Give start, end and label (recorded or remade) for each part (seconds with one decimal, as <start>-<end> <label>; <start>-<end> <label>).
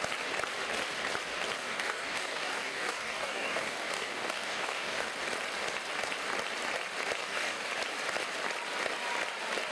0.0-1.6 recorded; 1.6-5.1 remade; 5.1-7.2 recorded; 7.2-7.7 remade; 7.7-9.7 recorded